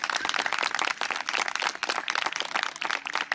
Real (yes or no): yes